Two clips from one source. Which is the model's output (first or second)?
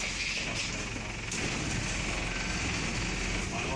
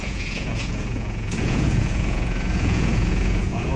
second